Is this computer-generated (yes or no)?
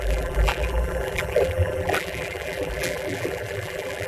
yes